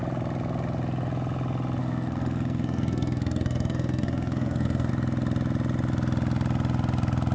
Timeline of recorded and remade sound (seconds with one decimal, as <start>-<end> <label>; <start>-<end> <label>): 0.0-1.8 recorded; 1.8-4.9 remade; 4.9-7.3 recorded

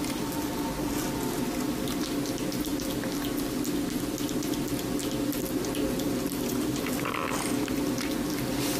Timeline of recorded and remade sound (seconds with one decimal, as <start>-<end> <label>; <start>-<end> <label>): 0.0-8.8 recorded

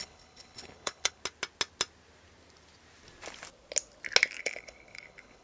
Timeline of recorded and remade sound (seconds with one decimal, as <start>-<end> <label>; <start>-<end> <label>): 0.0-1.2 remade; 1.2-4.4 recorded; 4.4-5.4 remade

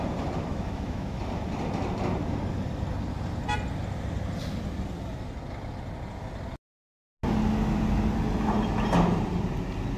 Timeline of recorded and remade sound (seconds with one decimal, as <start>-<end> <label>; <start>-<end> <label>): 0.0-0.5 recorded; 0.5-1.2 remade; 1.2-10.0 recorded

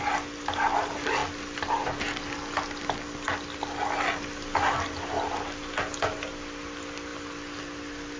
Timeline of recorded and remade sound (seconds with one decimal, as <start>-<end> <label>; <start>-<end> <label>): 0.0-8.2 recorded

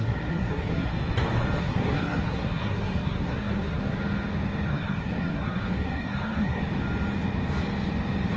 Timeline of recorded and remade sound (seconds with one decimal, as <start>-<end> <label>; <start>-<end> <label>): 0.0-0.9 remade; 0.9-1.6 recorded; 1.6-4.0 remade; 4.0-4.7 recorded; 4.7-6.6 remade; 6.6-8.4 recorded

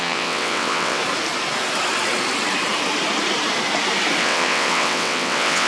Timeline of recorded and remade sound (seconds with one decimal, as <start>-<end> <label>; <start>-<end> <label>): 0.0-1.0 remade; 1.0-4.2 recorded; 4.2-5.7 remade

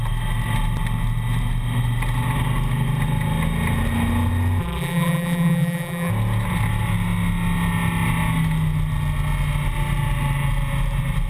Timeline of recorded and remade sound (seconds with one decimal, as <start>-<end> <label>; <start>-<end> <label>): 0.0-4.6 recorded; 4.6-6.1 remade; 6.1-11.3 recorded